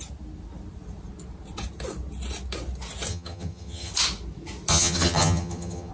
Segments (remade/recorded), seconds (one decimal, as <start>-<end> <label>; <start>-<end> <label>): 0.0-3.1 recorded; 3.1-3.9 remade; 3.9-4.7 recorded; 4.7-5.9 remade